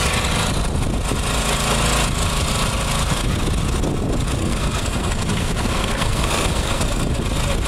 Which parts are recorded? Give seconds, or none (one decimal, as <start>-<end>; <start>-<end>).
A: 0.0-4.4; 7.1-7.7

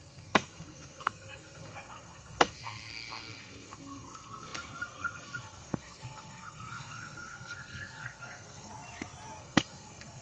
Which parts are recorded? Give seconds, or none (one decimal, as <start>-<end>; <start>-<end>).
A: 8.7-9.4

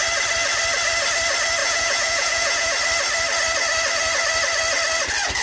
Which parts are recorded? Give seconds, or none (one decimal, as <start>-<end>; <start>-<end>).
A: 0.0-1.6; 2.7-5.4

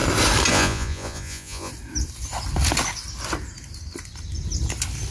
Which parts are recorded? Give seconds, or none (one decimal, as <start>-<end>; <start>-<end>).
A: 0.0-0.5; 1.7-5.1

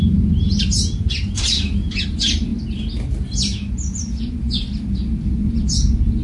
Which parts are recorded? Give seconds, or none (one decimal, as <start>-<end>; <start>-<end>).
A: 0.0-6.2

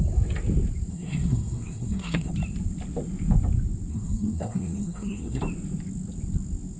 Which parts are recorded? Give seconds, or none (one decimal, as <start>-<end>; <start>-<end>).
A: 0.0-0.9; 2.3-3.9; 5.4-6.8

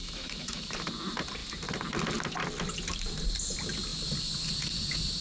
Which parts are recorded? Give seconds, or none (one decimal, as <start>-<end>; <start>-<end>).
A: 0.9-5.2

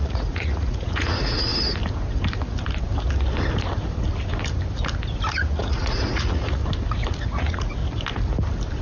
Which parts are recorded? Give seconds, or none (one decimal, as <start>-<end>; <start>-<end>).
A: 1.5-5.3; 6.6-7.1; 7.8-8.8